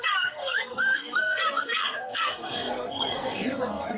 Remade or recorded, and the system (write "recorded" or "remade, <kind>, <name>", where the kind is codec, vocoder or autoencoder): remade, codec, SNAC